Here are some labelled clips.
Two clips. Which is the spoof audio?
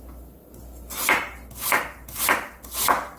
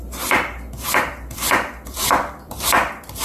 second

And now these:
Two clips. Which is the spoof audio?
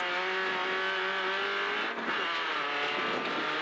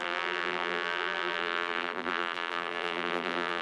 second